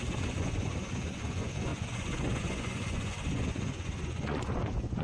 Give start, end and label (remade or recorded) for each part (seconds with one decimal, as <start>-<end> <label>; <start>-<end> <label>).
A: 0.0-5.0 remade

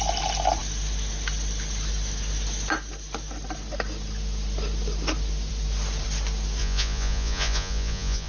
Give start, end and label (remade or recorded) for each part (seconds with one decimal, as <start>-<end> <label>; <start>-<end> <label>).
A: 0.0-6.6 recorded; 6.6-8.3 remade